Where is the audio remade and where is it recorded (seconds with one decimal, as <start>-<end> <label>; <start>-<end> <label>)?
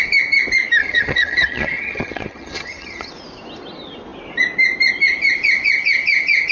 0.0-0.8 recorded; 0.8-3.1 remade; 3.1-6.5 recorded